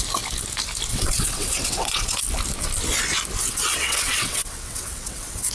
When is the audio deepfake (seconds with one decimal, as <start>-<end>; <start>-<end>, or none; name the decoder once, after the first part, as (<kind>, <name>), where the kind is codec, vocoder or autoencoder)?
0.9-2.2 (vocoder, WaveNeXt); 3.4-5.5